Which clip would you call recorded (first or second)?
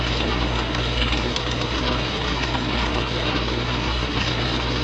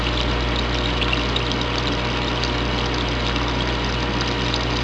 second